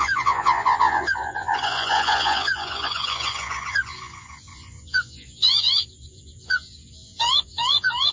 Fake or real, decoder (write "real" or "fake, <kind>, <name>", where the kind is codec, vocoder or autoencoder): fake, vocoder, Vocos